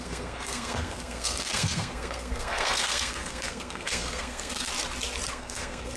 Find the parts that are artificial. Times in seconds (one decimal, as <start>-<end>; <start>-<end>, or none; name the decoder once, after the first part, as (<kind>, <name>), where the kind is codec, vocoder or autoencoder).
0.0-4.7 (codec, SNAC); 5.3-6.0